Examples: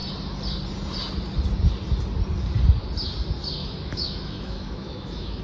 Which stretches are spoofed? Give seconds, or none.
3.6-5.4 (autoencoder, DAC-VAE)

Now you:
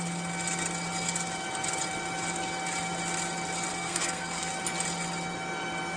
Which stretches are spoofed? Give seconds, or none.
3.7-4.5 (codec, SNAC)